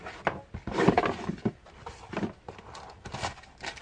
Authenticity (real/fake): real